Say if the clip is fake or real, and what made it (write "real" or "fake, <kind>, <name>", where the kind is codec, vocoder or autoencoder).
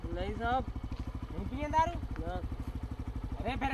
real